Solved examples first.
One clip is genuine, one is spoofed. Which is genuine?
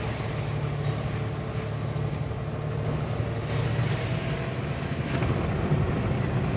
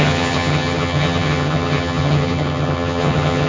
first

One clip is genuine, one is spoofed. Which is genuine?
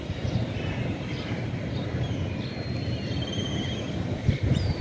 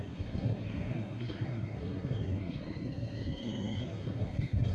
first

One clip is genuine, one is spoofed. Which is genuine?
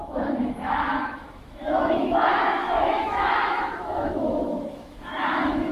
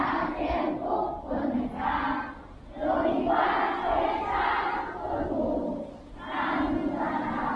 second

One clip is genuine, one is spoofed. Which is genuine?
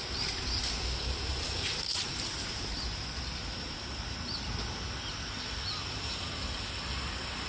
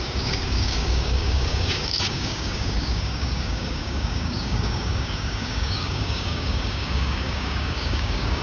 first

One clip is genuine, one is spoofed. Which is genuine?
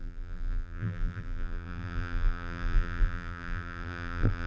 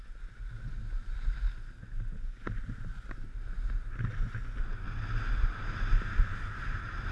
second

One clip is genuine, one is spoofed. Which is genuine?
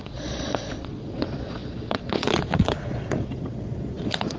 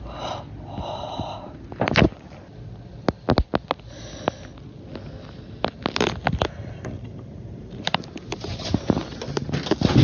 second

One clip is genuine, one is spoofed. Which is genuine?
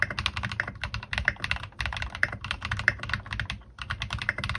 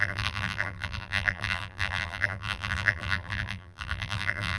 first